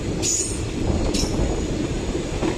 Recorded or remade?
recorded